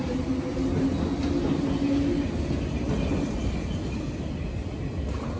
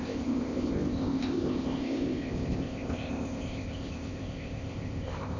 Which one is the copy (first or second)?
second